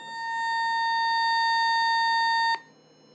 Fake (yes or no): no